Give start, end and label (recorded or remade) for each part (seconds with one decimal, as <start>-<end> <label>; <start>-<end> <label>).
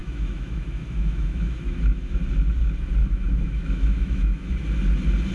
0.0-2.2 remade; 2.2-3.0 recorded; 3.0-4.6 remade; 4.6-5.3 recorded